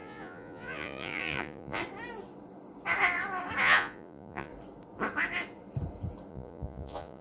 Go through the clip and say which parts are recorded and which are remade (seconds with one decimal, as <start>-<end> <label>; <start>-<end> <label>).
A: 0.0-1.8 remade; 1.8-3.6 recorded; 3.6-4.5 remade; 4.5-6.3 recorded; 6.3-7.2 remade